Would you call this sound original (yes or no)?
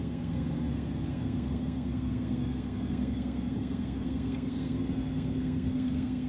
no